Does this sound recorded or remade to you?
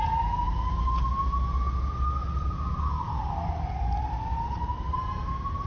recorded